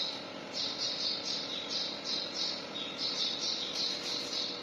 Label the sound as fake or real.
real